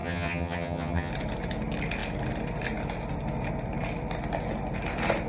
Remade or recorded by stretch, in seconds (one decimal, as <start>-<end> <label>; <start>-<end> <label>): 0.0-1.1 remade; 1.1-5.3 recorded